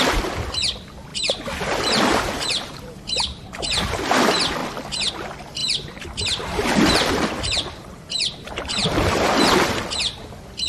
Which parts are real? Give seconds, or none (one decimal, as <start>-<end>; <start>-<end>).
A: 0.0-1.1; 3.5-5.6; 9.8-10.7